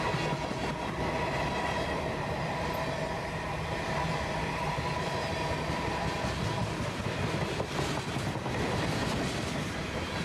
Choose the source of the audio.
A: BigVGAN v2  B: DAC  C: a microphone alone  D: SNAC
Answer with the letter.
C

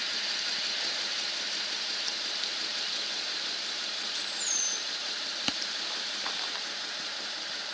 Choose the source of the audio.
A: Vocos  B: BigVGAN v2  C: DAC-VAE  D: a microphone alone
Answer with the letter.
B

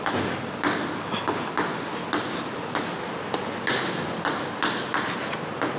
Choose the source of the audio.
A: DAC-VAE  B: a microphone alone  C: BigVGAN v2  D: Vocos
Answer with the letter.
B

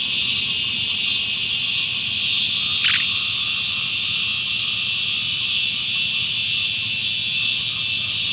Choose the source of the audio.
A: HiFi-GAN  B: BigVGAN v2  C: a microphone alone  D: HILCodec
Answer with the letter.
C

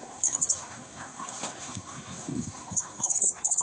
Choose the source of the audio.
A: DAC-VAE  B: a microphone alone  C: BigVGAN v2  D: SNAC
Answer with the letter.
D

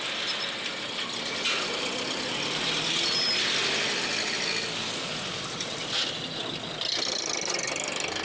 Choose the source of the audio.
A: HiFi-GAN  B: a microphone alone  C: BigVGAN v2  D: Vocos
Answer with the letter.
B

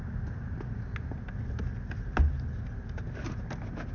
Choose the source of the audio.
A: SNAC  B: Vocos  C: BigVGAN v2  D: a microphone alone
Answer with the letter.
D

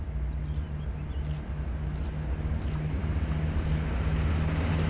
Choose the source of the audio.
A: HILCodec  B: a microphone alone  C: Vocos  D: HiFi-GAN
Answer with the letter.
B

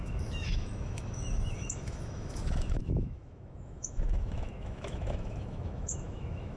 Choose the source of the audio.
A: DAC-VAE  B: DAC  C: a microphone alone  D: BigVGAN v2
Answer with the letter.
A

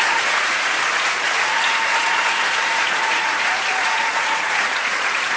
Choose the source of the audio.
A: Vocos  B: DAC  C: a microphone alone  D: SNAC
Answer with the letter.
A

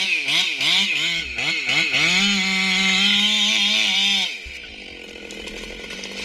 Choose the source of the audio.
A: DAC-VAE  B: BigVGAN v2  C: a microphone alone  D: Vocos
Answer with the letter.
C